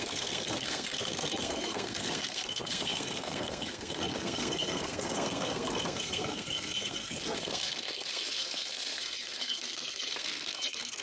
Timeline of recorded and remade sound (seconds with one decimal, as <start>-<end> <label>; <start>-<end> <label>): 0.0-11.0 remade